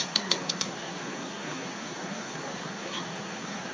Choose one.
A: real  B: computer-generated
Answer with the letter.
B